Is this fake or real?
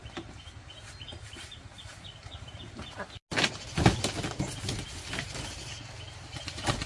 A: real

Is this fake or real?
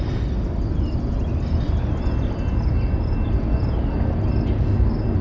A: real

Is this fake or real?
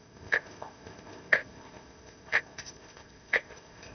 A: fake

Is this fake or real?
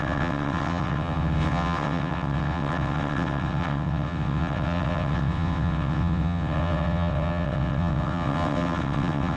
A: fake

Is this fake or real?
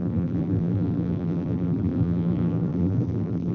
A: fake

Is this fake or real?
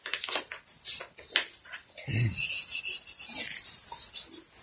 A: real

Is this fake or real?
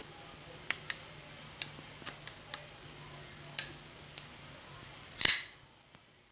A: real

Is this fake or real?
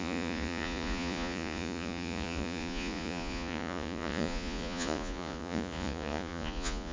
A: fake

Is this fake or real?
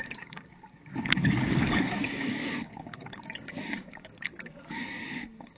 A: fake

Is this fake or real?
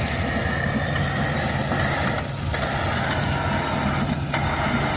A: real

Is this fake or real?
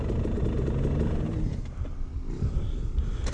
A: real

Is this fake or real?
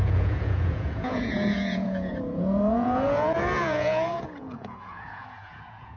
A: fake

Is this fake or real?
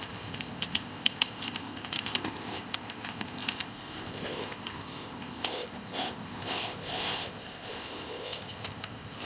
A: fake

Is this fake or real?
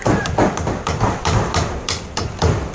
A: real